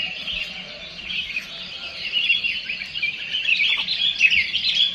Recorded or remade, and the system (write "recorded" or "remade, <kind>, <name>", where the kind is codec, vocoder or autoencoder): recorded